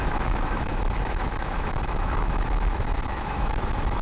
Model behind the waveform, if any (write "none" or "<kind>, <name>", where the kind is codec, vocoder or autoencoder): autoencoder, DAC-VAE